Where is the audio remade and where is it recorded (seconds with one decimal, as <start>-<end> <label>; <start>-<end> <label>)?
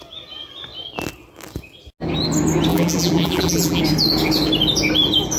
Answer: 0.0-2.7 recorded; 2.7-3.8 remade; 3.8-5.4 recorded